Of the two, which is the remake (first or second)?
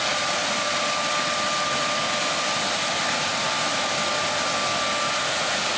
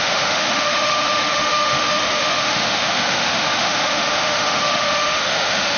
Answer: second